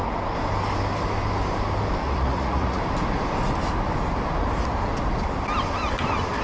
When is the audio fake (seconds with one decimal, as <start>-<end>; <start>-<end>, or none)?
2.0-2.8